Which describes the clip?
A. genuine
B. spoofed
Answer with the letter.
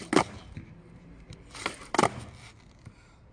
A